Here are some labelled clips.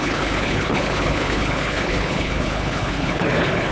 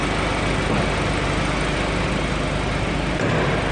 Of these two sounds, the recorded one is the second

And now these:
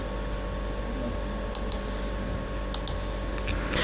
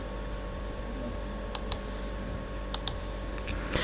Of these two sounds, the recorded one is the first